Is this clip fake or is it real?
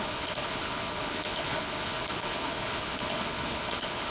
fake